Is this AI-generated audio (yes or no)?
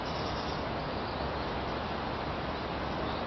no